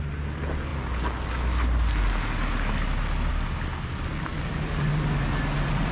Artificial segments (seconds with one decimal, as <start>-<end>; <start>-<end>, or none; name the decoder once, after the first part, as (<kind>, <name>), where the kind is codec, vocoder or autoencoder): none